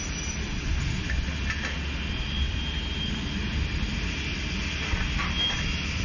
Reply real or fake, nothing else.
real